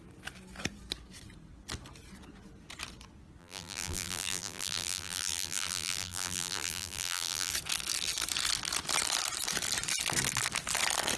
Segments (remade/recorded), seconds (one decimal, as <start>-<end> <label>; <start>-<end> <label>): 0.0-3.4 recorded; 3.4-7.5 remade; 7.5-11.2 recorded